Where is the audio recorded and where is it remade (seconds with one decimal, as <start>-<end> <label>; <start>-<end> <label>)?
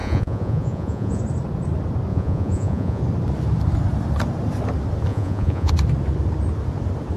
0.0-1.2 remade; 1.2-2.1 recorded; 2.1-3.0 remade; 3.0-5.1 recorded; 5.1-5.7 remade; 5.7-7.2 recorded